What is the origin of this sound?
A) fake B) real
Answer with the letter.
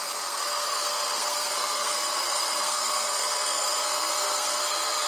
A